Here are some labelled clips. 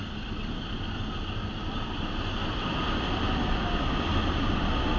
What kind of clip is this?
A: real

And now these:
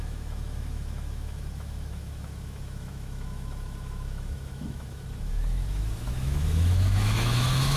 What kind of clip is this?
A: fake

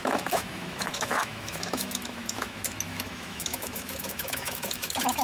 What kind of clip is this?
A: fake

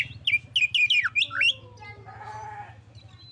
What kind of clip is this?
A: real